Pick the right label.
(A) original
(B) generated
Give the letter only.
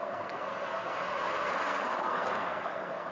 B